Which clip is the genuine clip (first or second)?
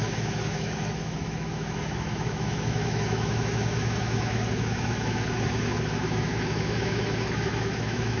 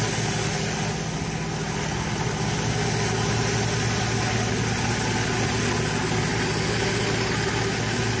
second